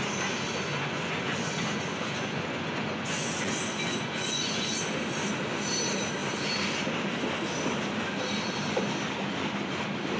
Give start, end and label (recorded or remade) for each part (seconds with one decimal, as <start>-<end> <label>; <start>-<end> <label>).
0.0-0.7 recorded; 0.7-5.3 remade; 5.3-10.2 recorded